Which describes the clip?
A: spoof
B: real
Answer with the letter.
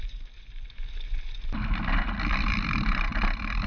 B